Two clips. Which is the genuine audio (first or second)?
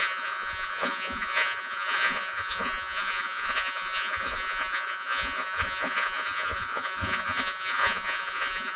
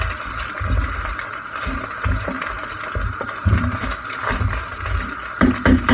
second